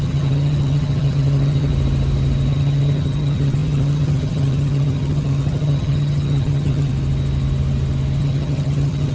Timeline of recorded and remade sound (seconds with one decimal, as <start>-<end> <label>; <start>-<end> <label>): 0.0-1.7 remade; 1.7-2.5 recorded; 2.5-6.9 remade; 6.9-8.2 recorded; 8.2-9.1 remade